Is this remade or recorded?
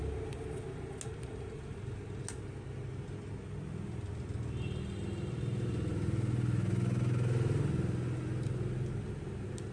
recorded